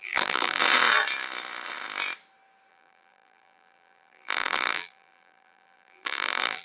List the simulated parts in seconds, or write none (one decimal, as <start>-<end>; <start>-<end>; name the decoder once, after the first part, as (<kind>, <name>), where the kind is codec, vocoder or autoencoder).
0.0-0.6 (vocoder, BigVGAN v2); 2.7-6.6